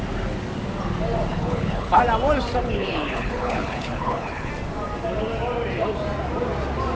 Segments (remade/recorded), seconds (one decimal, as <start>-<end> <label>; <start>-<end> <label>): 0.0-1.3 recorded; 1.3-2.0 remade; 2.0-2.6 recorded; 2.6-4.5 remade; 4.5-7.0 recorded

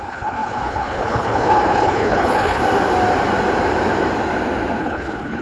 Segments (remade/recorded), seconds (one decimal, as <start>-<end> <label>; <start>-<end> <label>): 0.0-2.6 remade; 2.6-4.8 recorded; 4.8-5.4 remade

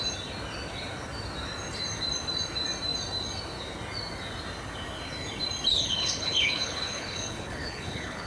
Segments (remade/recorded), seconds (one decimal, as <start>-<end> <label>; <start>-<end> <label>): 0.0-5.7 recorded; 5.7-8.3 remade

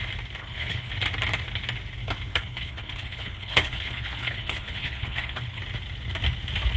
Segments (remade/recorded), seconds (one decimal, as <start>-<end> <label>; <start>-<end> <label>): 0.0-0.4 recorded; 0.4-0.9 remade; 0.9-2.3 recorded; 2.3-5.6 remade; 5.6-6.8 recorded